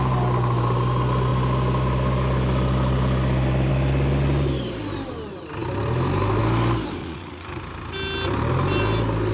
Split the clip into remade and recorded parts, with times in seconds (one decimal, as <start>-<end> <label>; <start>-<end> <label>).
0.0-7.0 recorded; 7.0-7.6 remade; 7.6-9.3 recorded